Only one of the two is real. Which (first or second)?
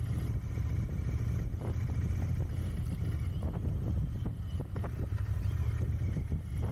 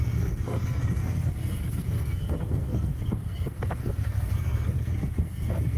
first